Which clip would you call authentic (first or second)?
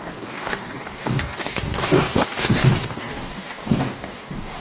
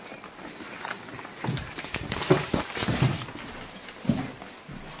second